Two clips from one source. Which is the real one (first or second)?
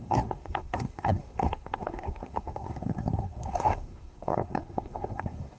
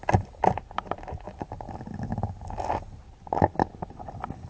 second